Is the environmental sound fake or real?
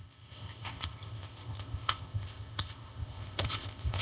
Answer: fake